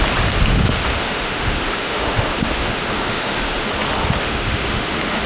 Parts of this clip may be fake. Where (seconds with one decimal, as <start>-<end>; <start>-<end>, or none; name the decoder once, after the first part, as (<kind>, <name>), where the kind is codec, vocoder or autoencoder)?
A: 0.5-3.7 (autoencoder, DAC-VAE); 4.2-5.3